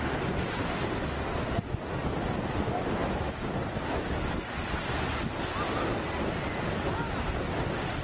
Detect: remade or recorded recorded